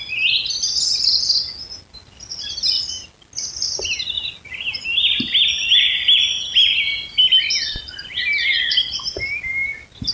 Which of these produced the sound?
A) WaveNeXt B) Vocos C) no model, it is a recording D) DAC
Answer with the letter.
C